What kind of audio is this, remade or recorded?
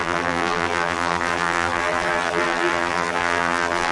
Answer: remade